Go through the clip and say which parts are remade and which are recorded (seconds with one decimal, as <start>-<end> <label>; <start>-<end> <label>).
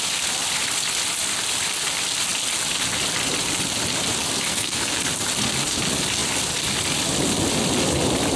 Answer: 0.0-4.5 recorded; 4.5-5.0 remade; 5.0-8.4 recorded